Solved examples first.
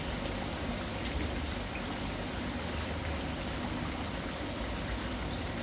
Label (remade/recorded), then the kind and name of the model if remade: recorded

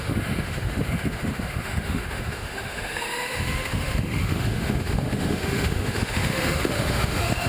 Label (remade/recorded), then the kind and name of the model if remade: remade, autoencoder, DAC-VAE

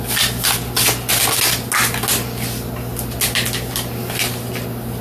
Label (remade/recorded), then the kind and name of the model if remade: recorded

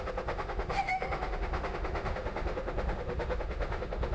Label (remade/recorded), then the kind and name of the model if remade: remade, autoencoder, DAC-VAE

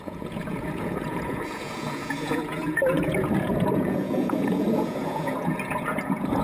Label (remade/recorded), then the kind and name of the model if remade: remade, vocoder, Vocos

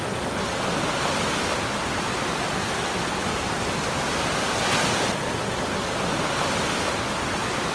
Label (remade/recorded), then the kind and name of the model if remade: recorded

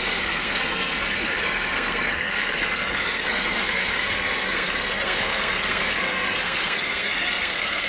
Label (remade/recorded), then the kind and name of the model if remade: remade, codec, SNAC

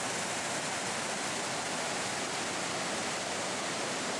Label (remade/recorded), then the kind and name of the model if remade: recorded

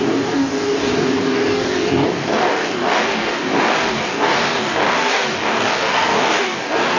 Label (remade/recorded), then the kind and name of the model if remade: remade, codec, DAC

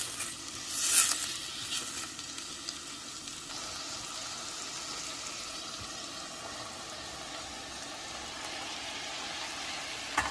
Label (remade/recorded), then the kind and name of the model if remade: recorded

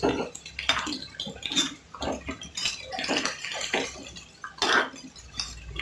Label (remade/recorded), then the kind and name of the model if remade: recorded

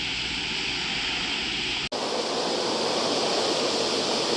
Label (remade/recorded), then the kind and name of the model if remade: recorded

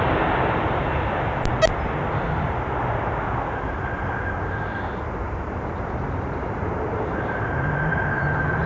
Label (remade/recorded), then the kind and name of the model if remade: recorded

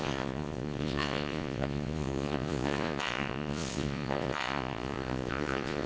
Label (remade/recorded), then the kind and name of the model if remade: remade, vocoder, Vocos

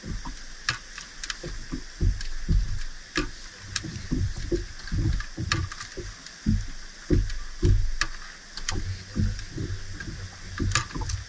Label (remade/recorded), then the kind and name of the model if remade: recorded